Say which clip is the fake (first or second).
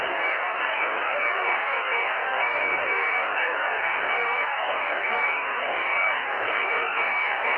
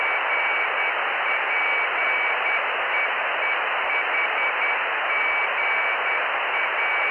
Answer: first